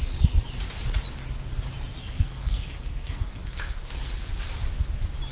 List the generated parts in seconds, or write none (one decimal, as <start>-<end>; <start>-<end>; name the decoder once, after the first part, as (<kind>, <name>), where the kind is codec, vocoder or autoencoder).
2.0-4.2 (codec, SNAC)